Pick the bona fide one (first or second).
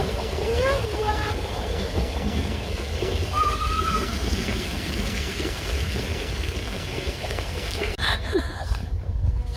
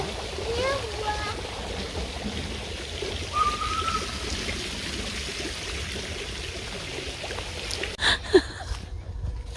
second